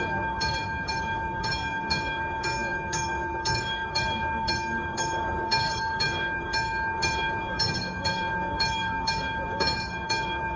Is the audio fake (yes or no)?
yes